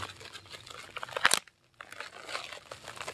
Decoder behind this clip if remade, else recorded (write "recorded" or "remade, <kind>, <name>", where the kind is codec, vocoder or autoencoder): recorded